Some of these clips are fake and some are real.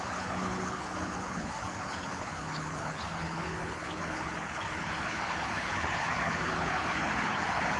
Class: fake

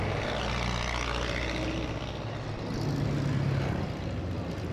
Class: real